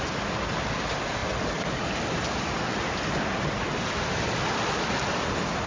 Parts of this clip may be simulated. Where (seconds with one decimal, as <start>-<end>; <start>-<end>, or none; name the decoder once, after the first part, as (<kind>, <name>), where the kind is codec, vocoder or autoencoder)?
none